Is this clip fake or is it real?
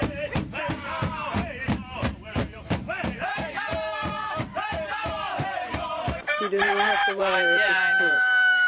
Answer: fake